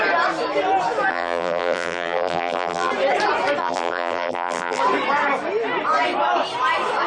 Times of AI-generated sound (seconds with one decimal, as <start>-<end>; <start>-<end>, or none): 1.1-2.9; 3.6-4.8